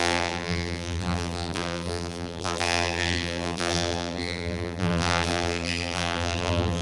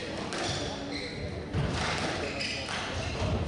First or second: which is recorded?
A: second